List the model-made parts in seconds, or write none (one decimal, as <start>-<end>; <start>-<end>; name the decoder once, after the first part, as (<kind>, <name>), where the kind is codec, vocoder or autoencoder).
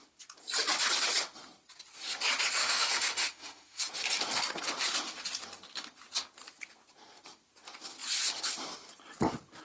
2.6-3.8 (autoencoder, DAC-VAE)